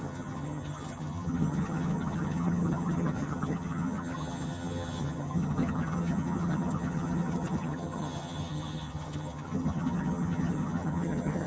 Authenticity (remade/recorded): remade